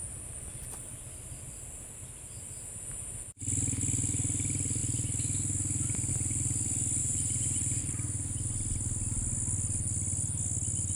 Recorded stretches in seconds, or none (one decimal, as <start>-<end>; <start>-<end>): 0.0-7.0; 7.8-11.0